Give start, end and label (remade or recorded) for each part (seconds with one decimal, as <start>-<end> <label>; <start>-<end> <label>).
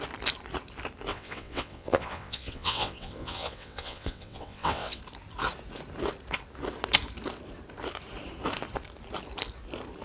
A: 0.0-1.1 recorded; 1.1-5.0 remade; 5.0-10.0 recorded